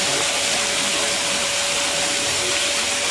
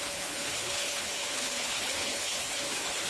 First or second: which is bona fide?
first